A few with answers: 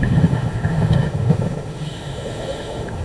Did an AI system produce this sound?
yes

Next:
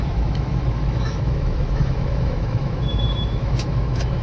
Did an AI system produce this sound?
yes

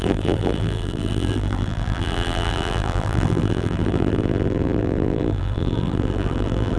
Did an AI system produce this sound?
yes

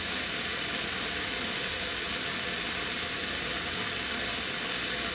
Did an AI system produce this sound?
yes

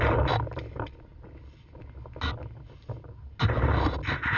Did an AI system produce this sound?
no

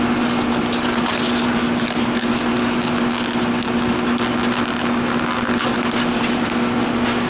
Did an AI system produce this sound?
no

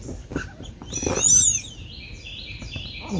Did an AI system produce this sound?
no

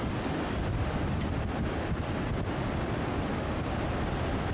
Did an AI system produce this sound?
no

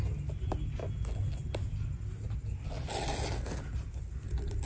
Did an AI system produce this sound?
no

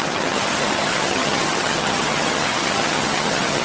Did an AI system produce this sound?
yes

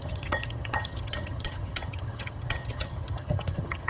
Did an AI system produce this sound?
yes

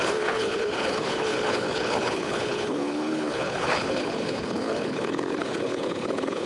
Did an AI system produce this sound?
yes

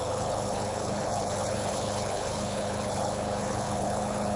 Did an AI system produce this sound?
yes